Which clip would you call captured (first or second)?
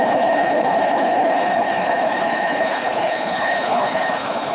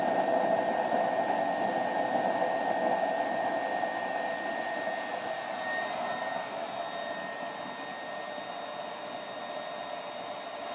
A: second